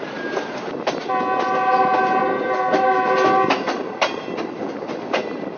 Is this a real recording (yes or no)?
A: yes